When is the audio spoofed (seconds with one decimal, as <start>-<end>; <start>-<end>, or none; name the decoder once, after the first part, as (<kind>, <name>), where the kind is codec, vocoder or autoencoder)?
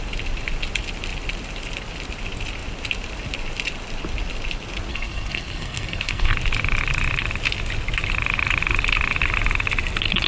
4.9-6.3 (codec, SNAC)